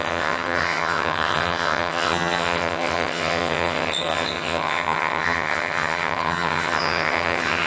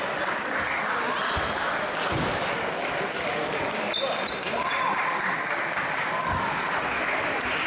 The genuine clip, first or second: second